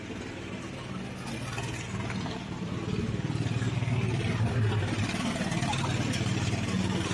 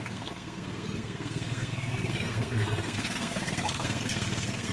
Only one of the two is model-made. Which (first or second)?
second